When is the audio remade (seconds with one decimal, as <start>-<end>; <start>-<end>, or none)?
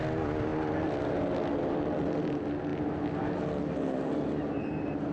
none